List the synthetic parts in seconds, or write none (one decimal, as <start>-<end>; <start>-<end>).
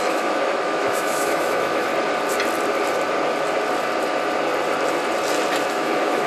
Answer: 0.0-1.9; 5.7-6.3